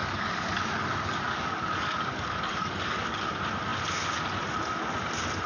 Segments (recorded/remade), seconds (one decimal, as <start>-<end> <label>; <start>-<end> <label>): 0.0-3.3 remade; 3.3-5.5 recorded